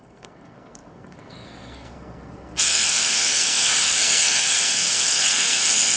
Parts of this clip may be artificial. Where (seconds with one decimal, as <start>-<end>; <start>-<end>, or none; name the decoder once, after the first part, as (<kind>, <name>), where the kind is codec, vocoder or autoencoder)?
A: 0.0-6.0 (codec, SNAC)